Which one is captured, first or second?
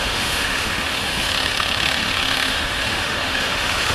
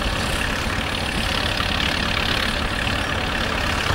second